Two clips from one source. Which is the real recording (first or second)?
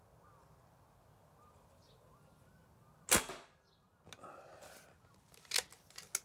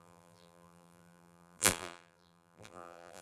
first